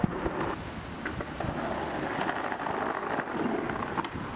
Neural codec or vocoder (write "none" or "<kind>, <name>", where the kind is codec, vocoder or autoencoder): none